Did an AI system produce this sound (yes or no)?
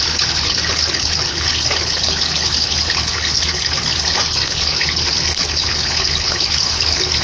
yes